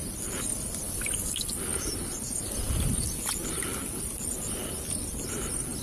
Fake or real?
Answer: real